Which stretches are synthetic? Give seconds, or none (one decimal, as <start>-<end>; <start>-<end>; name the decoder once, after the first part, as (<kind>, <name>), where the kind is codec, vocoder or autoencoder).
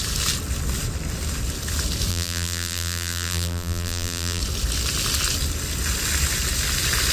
2.1-4.4 (vocoder, BigVGAN v2)